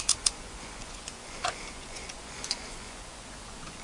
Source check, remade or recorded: remade